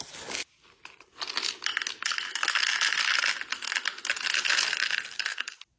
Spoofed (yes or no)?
no